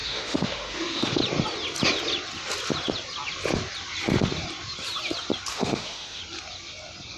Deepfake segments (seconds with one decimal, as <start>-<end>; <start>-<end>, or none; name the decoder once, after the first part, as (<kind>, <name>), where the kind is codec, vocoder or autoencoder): 0.0-1.2 (autoencoder, DAC-VAE); 5.5-6.2